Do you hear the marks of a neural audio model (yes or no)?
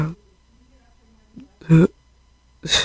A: no